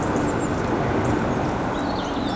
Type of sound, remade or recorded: recorded